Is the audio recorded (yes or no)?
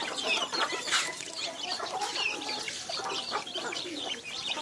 no